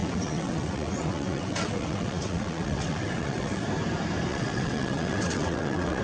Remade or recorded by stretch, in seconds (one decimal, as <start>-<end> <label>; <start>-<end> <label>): 0.0-3.6 remade; 3.6-4.3 recorded; 4.3-6.0 remade